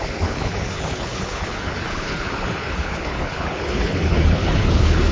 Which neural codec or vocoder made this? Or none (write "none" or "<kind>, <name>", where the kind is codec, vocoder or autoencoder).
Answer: codec, HILCodec